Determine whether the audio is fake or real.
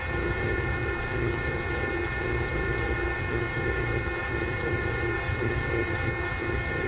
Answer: fake